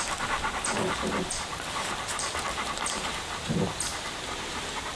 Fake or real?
fake